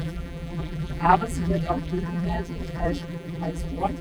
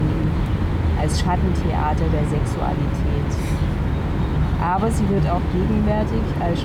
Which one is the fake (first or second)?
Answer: first